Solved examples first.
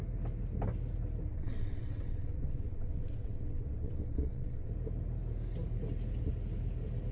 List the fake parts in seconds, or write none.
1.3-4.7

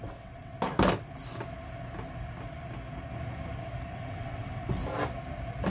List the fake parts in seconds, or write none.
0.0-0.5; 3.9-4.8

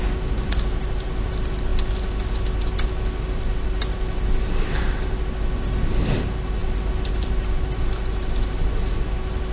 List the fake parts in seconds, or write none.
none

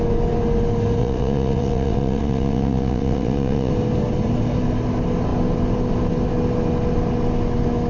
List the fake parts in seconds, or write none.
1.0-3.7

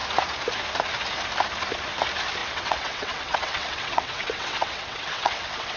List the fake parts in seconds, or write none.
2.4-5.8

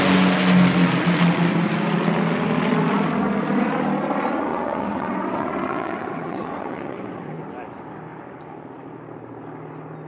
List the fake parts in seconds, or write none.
4.5-7.4

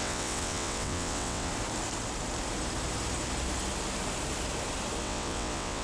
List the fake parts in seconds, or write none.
0.0-1.5; 5.0-5.8